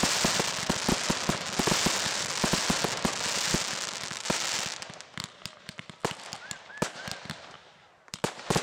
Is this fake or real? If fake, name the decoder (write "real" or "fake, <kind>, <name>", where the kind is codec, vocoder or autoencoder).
real